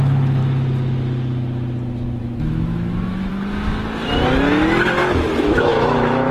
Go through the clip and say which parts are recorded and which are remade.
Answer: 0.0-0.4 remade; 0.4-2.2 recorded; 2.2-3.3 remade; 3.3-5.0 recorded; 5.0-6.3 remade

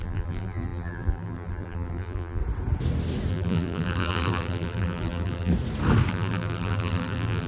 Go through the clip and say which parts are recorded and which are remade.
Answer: 0.0-2.4 remade; 2.4-3.3 recorded; 3.3-5.5 remade; 5.5-6.1 recorded; 6.1-7.5 remade

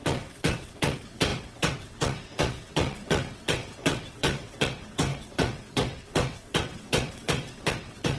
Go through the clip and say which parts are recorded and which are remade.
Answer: 0.0-8.2 remade

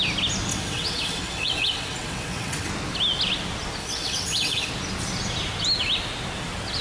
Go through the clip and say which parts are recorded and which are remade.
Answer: 0.0-0.5 recorded; 0.5-2.7 remade; 2.7-3.8 recorded; 3.8-4.7 remade; 4.7-6.8 recorded

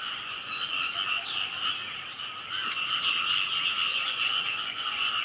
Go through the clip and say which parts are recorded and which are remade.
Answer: 0.0-0.9 remade; 0.9-2.6 recorded; 2.6-3.1 remade; 3.1-3.9 recorded; 3.9-5.2 remade

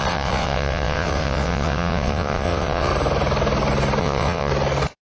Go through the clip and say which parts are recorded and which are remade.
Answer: 0.0-2.9 remade; 2.9-4.0 recorded; 4.0-4.5 remade; 4.5-5.1 recorded

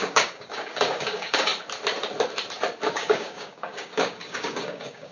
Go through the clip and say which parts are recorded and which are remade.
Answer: 0.0-1.5 remade; 1.5-2.9 recorded; 2.9-5.1 remade

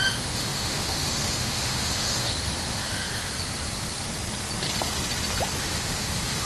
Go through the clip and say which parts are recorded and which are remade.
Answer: 0.0-3.3 remade; 3.3-5.6 recorded; 5.6-6.5 remade